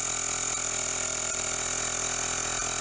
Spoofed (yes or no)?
no